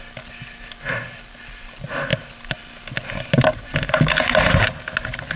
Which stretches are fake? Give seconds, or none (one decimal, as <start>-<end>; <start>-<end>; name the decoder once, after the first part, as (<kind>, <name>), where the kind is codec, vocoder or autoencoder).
2.1-4.8 (vocoder, BigVGAN v2)